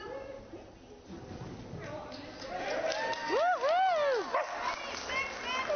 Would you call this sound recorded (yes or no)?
yes